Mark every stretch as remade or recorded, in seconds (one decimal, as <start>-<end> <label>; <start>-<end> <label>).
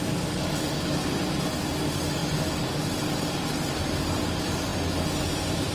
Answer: 0.0-5.7 recorded